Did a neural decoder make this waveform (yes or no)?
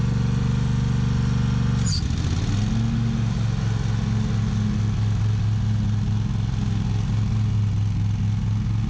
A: no